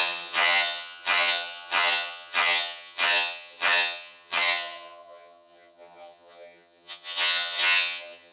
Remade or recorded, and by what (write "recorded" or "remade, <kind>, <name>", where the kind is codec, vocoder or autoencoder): remade, vocoder, HiFi-GAN